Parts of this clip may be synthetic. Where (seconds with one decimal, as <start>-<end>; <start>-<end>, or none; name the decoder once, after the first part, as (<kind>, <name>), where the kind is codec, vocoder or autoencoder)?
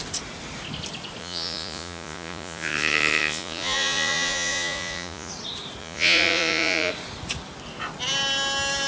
1.2-5.3 (vocoder, Vocos); 5.8-6.9